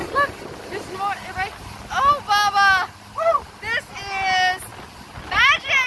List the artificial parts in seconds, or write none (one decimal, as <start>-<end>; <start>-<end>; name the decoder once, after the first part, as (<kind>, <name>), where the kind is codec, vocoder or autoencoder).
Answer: 0.0-0.5 (vocoder, BigVGAN v2); 4.7-5.9